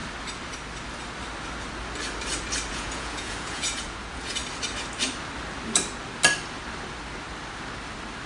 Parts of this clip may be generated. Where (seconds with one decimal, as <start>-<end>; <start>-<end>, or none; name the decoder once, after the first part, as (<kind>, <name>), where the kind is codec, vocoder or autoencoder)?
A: 2.7-4.4 (vocoder, Vocos)